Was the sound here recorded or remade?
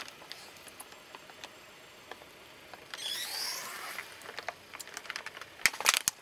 recorded